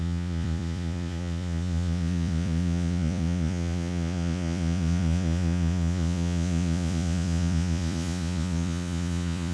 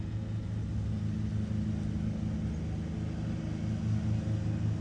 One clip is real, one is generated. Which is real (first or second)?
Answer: second